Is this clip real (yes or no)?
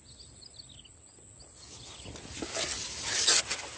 yes